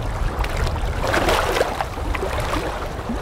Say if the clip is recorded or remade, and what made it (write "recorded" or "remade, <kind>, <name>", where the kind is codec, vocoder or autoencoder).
recorded